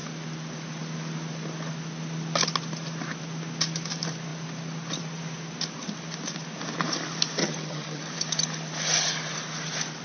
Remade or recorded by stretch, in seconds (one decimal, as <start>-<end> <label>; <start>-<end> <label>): 0.0-7.4 recorded; 7.4-8.0 remade; 8.0-10.0 recorded